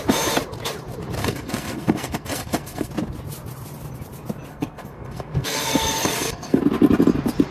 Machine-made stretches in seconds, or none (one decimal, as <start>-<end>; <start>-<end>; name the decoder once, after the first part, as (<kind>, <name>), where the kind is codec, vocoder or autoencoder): 1.2-2.9 (codec, SNAC); 4.5-6.6